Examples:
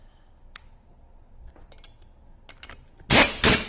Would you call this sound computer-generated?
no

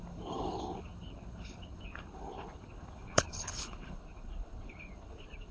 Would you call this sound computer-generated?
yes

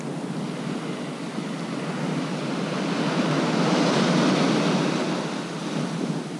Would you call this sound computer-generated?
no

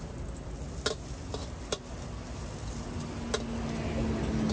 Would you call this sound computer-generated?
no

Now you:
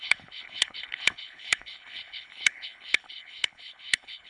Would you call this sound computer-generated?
yes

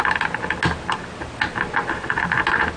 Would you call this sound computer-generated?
no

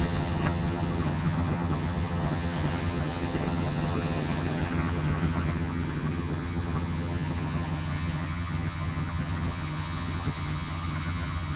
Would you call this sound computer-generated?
yes